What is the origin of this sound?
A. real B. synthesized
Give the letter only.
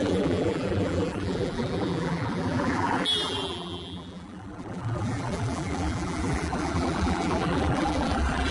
B